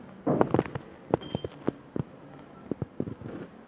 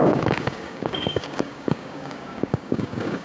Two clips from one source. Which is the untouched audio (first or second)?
first